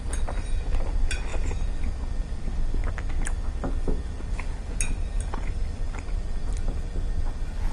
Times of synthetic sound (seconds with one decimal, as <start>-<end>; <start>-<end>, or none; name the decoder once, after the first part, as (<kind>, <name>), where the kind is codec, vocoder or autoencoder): none